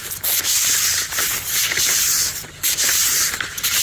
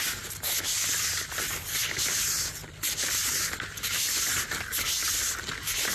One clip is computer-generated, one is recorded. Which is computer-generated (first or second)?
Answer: first